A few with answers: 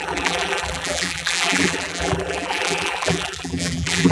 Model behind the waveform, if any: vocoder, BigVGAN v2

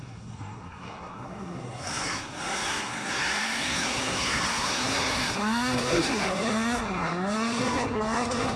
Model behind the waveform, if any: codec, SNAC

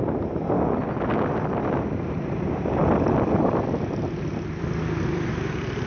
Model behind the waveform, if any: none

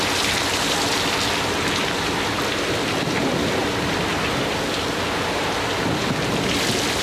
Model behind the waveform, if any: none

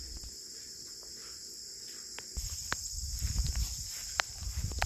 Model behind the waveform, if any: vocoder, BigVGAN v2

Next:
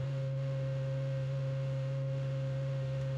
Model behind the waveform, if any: autoencoder, DAC-VAE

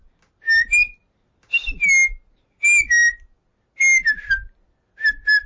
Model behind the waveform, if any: none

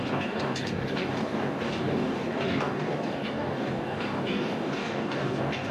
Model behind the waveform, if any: codec, DAC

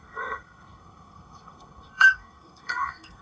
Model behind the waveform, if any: codec, SNAC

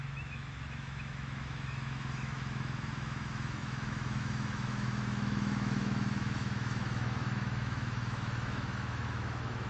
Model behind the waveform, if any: autoencoder, DAC-VAE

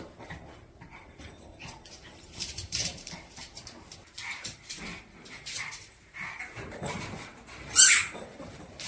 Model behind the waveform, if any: vocoder, BigVGAN v2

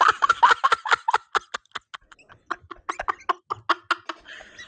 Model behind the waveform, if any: none